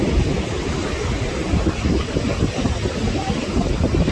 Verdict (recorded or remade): recorded